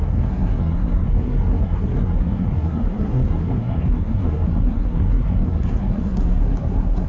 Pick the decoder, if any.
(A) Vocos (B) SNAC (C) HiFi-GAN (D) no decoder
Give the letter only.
B